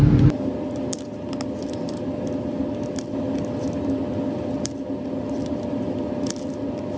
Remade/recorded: recorded